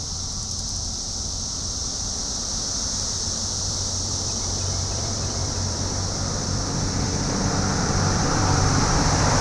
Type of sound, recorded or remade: remade